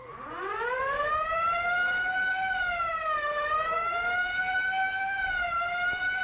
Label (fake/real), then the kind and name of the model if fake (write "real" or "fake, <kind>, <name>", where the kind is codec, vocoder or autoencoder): real